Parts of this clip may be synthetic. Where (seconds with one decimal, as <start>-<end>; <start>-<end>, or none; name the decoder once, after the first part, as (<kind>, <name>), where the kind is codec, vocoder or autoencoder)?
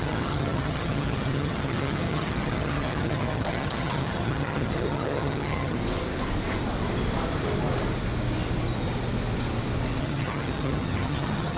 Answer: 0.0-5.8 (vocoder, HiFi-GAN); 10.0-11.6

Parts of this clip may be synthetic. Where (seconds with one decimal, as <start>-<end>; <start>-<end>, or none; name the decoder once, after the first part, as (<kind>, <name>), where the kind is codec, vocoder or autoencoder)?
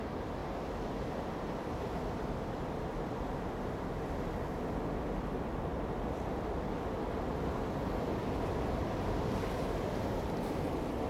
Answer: 0.4-2.1 (vocoder, BigVGAN v2)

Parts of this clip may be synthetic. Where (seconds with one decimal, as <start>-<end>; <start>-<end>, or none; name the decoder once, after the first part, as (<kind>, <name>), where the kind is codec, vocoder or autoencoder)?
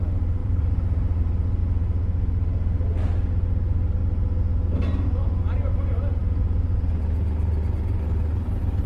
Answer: 0.4-1.2 (vocoder, BigVGAN v2)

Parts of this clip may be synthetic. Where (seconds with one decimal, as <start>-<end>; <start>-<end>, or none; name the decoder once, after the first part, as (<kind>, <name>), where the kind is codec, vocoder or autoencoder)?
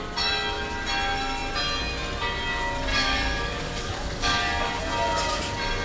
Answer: 2.9-4.8 (codec, DAC)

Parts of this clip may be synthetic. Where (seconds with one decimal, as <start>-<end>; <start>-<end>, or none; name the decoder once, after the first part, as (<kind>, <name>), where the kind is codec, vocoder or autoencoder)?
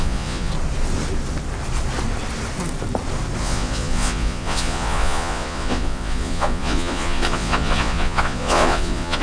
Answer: 0.0-0.5 (vocoder, Vocos); 3.4-9.2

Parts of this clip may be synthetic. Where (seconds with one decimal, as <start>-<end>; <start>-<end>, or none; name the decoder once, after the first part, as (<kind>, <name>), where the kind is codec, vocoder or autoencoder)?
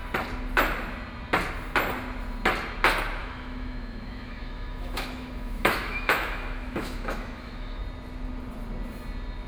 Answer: 3.2-7.8 (autoencoder, DAC-VAE)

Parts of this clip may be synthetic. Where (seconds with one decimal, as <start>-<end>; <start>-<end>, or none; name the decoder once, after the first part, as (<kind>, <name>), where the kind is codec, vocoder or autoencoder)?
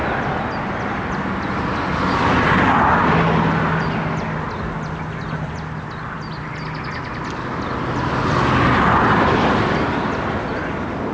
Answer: none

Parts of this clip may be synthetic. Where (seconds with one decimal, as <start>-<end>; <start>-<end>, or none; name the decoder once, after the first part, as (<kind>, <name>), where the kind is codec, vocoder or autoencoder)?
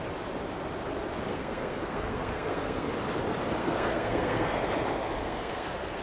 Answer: 1.3-2.9 (codec, SNAC); 3.6-4.7; 5.2-6.0